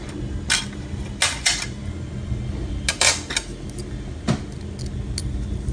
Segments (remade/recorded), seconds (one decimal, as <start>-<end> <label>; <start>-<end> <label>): 0.0-5.7 recorded